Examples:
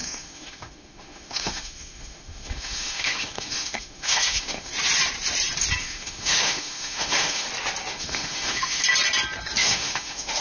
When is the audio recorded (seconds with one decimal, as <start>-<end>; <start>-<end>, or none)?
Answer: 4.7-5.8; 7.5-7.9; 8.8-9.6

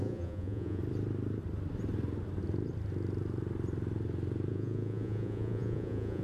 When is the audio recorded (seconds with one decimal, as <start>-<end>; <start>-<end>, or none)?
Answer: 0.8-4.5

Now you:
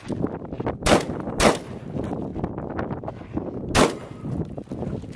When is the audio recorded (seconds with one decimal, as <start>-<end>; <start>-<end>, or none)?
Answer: 0.0-5.2

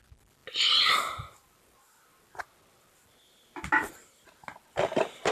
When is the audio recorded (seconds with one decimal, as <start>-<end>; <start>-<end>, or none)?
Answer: 0.0-5.3